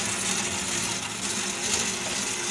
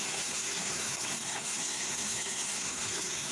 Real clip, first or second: first